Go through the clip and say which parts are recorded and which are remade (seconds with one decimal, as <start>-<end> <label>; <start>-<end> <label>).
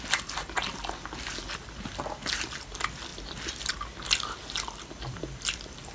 0.0-5.9 recorded